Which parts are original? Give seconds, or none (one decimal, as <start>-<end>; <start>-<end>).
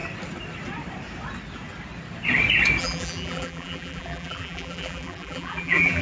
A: 0.0-2.8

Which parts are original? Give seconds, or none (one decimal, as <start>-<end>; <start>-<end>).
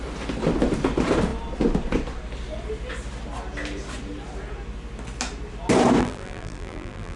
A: 0.0-6.0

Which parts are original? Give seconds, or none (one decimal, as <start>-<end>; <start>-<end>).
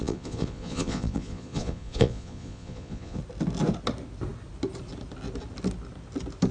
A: 3.2-6.5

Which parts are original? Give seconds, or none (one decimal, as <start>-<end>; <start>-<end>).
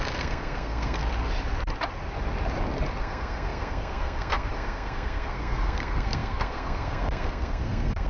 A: 1.0-3.0